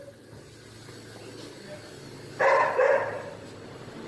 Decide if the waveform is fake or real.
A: real